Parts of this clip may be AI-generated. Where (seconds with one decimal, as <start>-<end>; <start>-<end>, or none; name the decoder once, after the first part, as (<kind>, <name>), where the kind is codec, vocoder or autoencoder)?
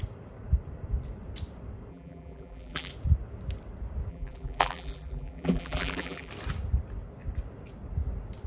1.9-2.9 (vocoder, BigVGAN v2); 4.1-6.3